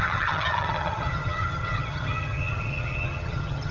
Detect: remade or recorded remade